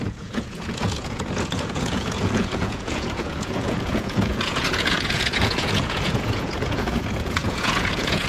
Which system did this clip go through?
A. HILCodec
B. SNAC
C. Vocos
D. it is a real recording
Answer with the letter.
C